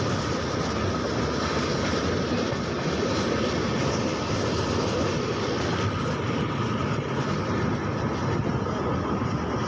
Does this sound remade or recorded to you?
recorded